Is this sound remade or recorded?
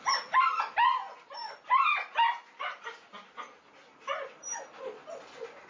recorded